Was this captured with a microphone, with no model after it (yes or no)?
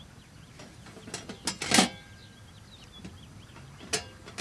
yes